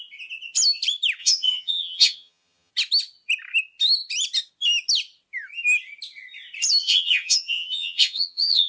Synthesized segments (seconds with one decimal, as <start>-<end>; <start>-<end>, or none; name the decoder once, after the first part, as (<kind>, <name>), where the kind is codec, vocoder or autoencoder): 1.2-2.7 (vocoder, HiFi-GAN); 6.8-8.7